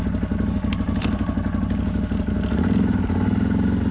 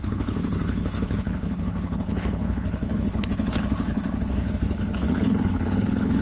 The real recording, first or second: first